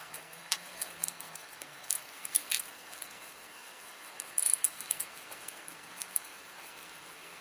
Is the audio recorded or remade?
remade